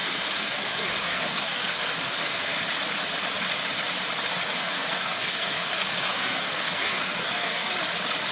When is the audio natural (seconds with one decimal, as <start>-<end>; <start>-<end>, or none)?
2.6-4.5; 7.7-8.3